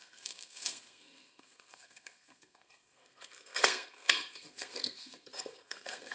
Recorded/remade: remade